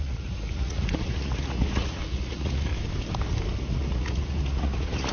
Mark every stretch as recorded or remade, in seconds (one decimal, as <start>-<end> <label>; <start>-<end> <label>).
0.0-2.7 remade; 2.7-3.6 recorded; 3.6-5.1 remade